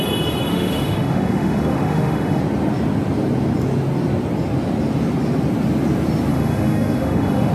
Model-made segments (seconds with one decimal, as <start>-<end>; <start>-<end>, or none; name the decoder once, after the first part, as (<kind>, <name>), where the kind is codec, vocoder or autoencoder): 0.5-2.4 (autoencoder, DAC-VAE); 6.3-7.5